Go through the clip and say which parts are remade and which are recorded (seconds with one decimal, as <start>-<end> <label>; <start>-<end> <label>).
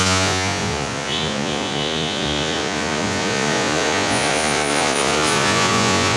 0.0-6.2 remade